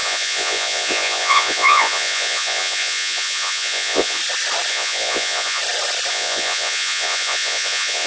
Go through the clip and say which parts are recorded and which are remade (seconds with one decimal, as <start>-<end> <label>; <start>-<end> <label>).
0.0-4.2 remade; 4.2-4.7 recorded; 4.7-5.6 remade; 5.6-6.1 recorded; 6.1-8.1 remade